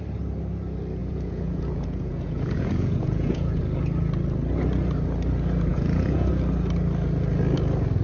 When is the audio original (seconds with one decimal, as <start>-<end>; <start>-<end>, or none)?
0.0-1.0; 3.6-5.7; 6.3-8.0